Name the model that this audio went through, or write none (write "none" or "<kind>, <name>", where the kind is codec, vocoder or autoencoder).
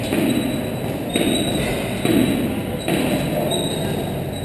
none